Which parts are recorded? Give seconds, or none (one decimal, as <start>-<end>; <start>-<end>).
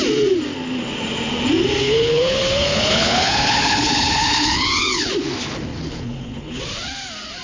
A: 0.0-1.8; 5.1-5.7; 6.6-7.4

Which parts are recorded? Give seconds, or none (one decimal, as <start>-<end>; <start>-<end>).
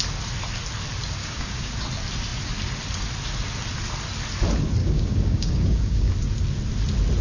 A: 0.0-1.2; 1.7-4.8; 6.1-7.2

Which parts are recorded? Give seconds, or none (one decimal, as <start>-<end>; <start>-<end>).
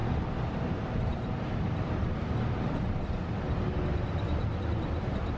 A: 0.0-0.6; 2.0-5.4